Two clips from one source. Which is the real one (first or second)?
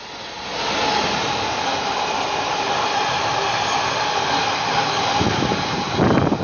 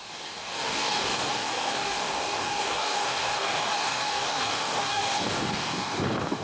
first